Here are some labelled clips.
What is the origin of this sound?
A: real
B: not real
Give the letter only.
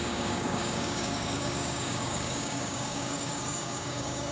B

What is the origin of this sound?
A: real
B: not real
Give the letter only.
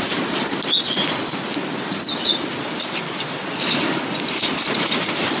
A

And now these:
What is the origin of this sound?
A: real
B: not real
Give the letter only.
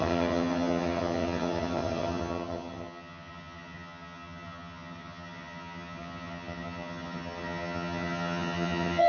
B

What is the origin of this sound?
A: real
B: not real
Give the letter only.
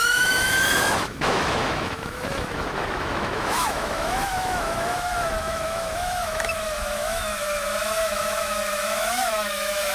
B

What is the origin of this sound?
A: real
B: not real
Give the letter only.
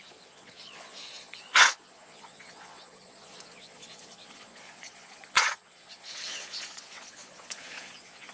B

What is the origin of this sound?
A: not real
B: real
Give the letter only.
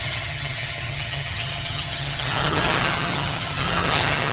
A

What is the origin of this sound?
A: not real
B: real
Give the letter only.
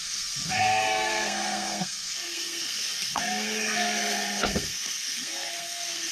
A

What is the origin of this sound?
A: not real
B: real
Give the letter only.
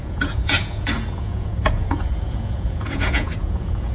A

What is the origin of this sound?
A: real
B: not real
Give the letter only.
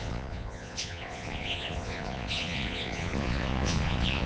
B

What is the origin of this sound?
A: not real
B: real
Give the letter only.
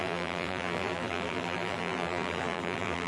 A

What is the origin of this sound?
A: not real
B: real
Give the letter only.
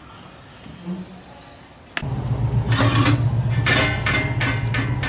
B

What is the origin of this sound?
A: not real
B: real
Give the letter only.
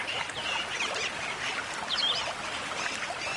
B